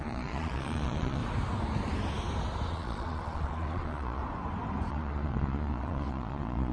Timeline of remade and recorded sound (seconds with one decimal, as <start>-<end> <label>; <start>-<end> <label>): 0.0-1.2 remade; 1.2-2.7 recorded; 2.7-4.2 remade; 4.2-4.9 recorded; 4.9-6.7 remade